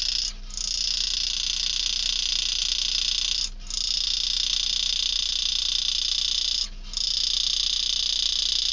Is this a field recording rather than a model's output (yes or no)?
yes